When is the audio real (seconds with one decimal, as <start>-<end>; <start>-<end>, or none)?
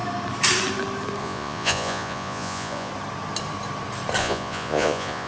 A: 0.0-1.2; 2.9-4.2